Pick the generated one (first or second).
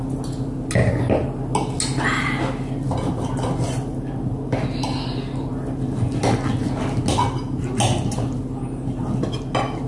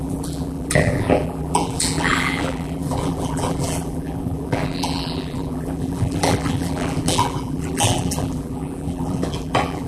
second